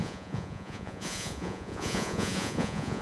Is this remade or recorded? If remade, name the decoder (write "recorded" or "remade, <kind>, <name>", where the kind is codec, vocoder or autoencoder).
remade, vocoder, Vocos